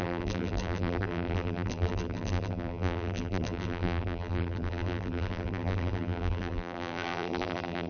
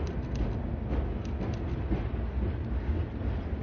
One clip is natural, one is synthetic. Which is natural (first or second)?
second